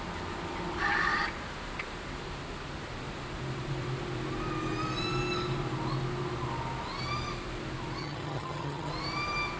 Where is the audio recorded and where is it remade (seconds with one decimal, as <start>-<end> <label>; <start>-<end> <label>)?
0.0-8.0 recorded; 8.0-8.9 remade; 8.9-9.6 recorded